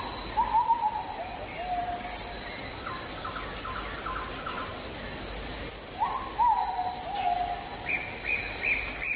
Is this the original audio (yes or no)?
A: yes